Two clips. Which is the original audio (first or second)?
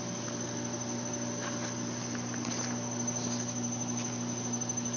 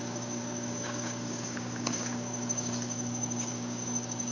first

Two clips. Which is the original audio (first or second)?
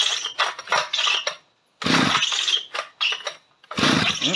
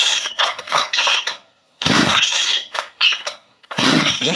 first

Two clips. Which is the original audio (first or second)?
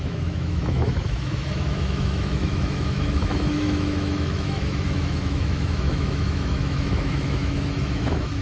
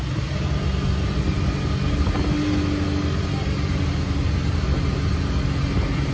second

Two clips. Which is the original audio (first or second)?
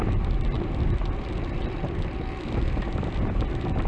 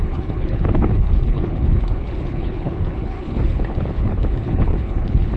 first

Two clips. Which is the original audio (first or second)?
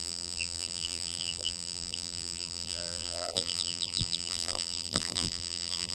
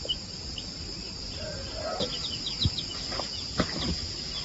second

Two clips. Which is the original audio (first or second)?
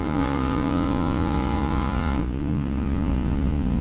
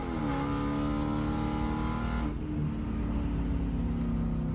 second